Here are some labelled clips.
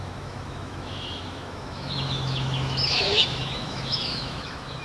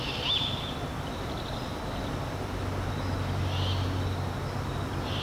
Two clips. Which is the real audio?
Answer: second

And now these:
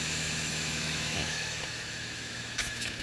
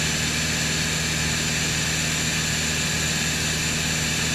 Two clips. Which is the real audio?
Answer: second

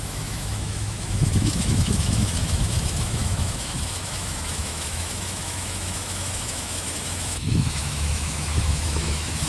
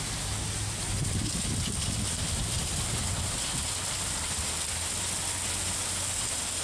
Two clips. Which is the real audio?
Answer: second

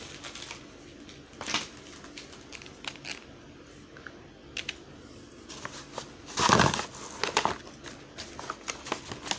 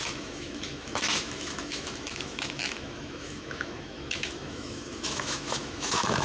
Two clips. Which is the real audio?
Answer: first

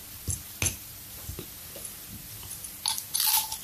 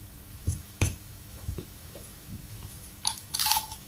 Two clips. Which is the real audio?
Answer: first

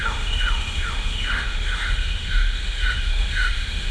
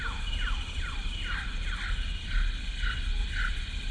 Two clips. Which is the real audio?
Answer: second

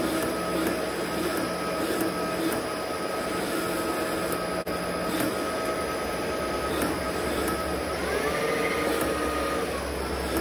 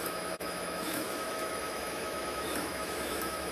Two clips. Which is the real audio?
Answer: first